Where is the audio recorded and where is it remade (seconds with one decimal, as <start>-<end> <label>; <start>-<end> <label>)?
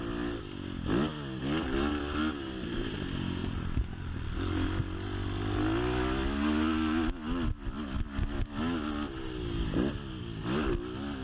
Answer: 0.0-3.4 recorded; 3.4-4.0 remade; 4.0-11.2 recorded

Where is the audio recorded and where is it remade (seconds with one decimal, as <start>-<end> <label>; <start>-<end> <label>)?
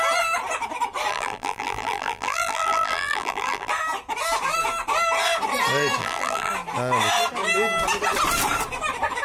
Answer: 0.0-1.1 recorded; 1.1-3.7 remade; 3.7-6.0 recorded; 6.0-6.5 remade; 6.5-9.2 recorded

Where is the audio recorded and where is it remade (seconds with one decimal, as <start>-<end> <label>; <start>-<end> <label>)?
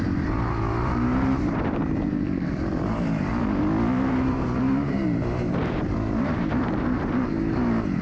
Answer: 0.0-3.3 remade; 3.3-4.1 recorded; 4.1-8.0 remade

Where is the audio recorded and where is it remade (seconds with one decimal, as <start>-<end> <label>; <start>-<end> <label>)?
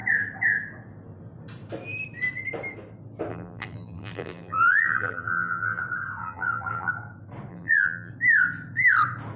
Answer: 0.0-3.3 recorded; 3.3-5.8 remade; 5.8-6.2 recorded; 6.2-6.9 remade; 6.9-7.5 recorded; 7.5-8.1 remade; 8.1-9.4 recorded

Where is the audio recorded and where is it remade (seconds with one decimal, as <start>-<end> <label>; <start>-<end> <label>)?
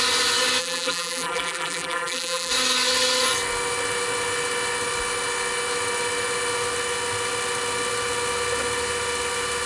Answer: 0.0-0.6 recorded; 0.6-2.5 remade; 2.5-9.7 recorded